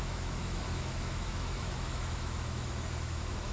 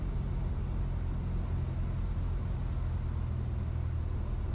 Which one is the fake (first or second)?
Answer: first